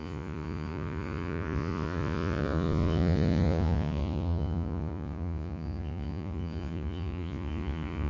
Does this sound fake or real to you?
fake